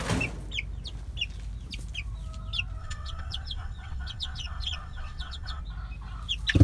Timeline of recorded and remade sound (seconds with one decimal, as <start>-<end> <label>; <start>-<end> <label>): 0.0-2.8 recorded; 2.8-5.6 remade; 5.6-6.6 recorded